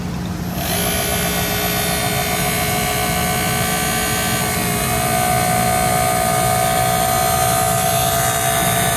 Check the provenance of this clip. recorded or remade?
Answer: recorded